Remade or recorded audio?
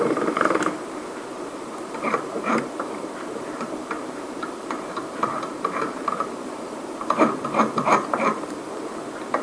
remade